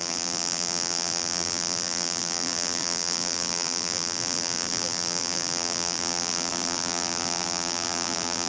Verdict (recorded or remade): remade